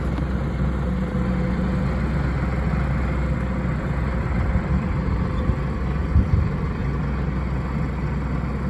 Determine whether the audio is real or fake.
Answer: real